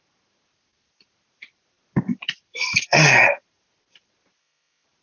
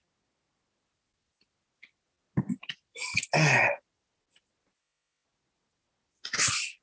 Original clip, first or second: second